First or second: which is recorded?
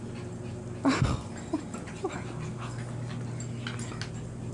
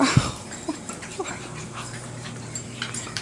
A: first